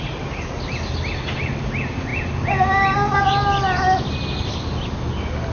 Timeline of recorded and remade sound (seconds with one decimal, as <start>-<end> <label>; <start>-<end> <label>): 0.0-5.5 recorded